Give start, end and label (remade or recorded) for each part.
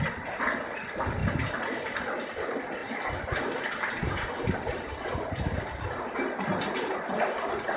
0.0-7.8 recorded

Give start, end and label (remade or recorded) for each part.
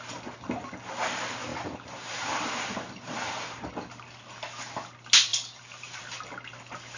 0.0-1.5 recorded; 1.5-3.7 remade; 3.7-5.3 recorded; 5.3-6.0 remade; 6.0-7.0 recorded